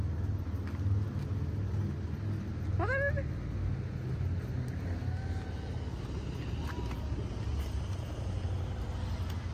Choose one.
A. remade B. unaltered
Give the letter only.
B